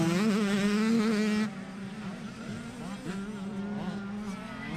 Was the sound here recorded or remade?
recorded